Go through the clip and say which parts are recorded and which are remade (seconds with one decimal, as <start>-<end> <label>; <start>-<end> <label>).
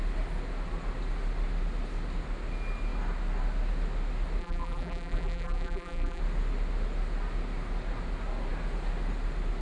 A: 0.0-4.4 recorded; 4.4-6.2 remade; 6.2-9.6 recorded